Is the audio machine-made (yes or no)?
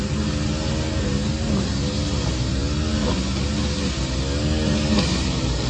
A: no